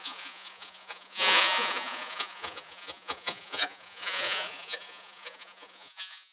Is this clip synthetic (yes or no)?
yes